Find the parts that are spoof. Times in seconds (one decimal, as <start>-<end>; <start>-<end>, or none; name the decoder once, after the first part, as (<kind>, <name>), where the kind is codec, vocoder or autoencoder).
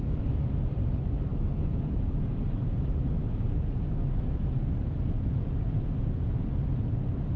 1.3-2.0 (autoencoder, DAC-VAE)